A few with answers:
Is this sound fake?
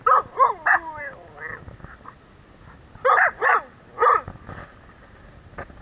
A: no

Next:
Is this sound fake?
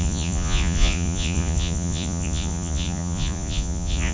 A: yes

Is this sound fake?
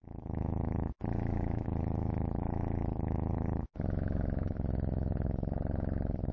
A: yes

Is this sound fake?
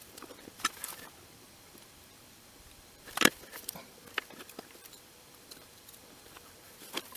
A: yes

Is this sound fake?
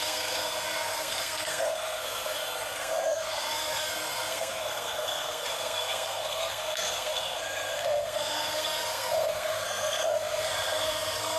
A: yes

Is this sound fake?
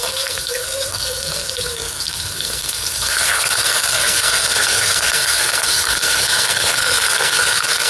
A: yes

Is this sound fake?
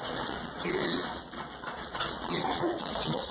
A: yes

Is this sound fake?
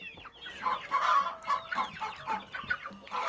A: no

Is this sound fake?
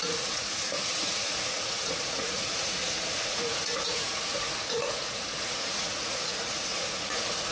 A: yes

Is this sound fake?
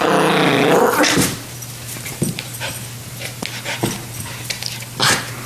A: no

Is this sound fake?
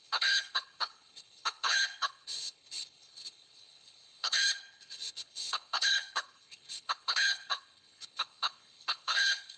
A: yes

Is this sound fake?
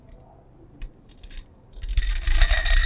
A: no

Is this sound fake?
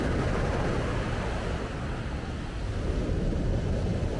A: no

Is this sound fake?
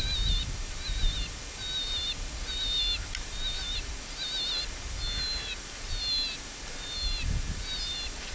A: no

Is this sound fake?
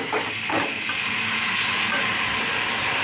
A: no